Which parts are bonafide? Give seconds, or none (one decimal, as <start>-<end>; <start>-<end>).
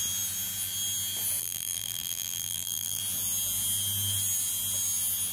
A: 0.0-1.4; 3.0-5.3